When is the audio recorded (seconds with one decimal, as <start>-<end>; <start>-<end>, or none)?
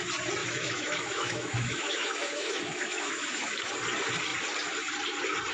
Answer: 0.0-0.4; 3.7-5.5